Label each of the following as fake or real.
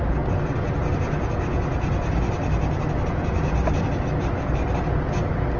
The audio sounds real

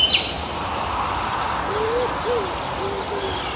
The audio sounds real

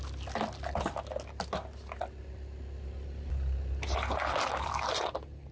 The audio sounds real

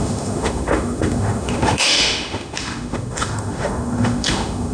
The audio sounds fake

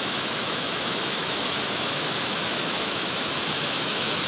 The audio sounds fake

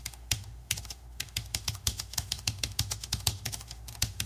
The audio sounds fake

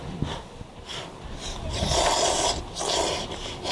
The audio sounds real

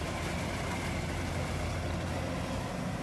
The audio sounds real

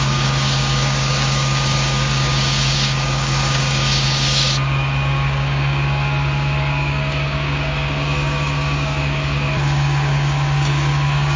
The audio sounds fake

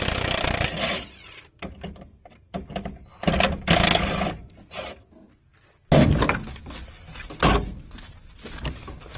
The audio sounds real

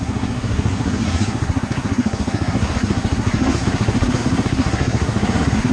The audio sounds fake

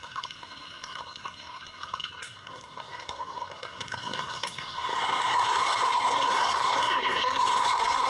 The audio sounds fake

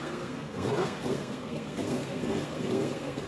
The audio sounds fake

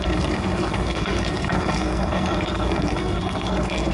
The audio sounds fake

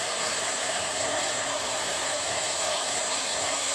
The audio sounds fake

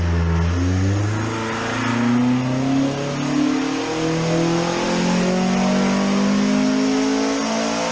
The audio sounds real